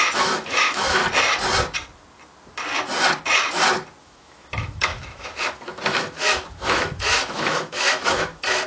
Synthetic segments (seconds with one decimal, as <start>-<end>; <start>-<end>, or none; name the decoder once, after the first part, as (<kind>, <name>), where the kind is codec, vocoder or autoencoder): 0.0-1.0 (autoencoder, DAC-VAE); 4.0-8.7